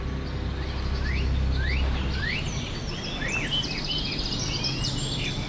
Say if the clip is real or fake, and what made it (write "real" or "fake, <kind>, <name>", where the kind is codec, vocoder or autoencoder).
real